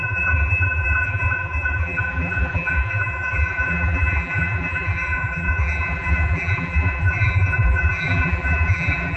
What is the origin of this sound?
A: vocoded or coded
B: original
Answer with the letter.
A